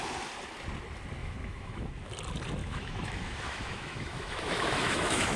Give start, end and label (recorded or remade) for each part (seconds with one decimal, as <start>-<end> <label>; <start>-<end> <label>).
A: 0.0-1.2 recorded; 1.2-2.1 remade; 2.1-2.6 recorded; 2.6-5.4 remade

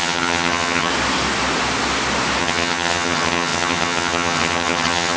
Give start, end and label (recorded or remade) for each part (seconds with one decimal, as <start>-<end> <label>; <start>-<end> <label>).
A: 0.0-0.9 remade; 0.9-2.4 recorded; 2.4-5.2 remade

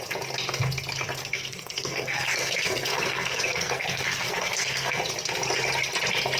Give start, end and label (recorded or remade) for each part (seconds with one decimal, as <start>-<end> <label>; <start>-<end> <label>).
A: 0.0-1.2 recorded; 1.2-5.0 remade; 5.0-6.4 recorded